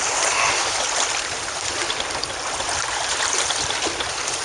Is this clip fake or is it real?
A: real